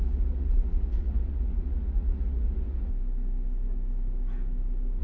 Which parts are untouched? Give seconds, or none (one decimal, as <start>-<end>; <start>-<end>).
2.9-5.0